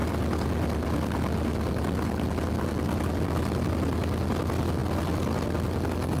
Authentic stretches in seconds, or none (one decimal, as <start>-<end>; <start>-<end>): 0.0-6.2